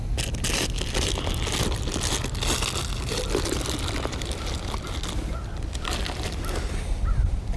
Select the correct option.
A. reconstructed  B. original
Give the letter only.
B